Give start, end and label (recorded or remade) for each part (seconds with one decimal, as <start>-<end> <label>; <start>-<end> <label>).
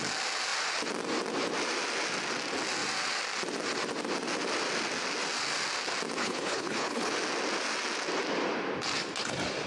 0.0-6.2 recorded; 6.2-7.1 remade; 7.1-9.7 recorded